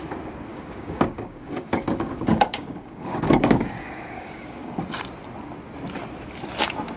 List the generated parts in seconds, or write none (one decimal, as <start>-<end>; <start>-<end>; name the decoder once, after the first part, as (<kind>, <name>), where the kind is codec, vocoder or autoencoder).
0.5-4.7 (codec, DAC)